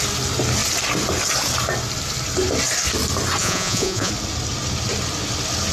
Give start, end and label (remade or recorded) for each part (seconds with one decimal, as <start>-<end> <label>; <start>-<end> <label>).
0.0-3.4 recorded; 3.4-4.1 remade; 4.1-5.7 recorded